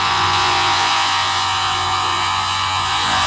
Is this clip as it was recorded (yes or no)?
no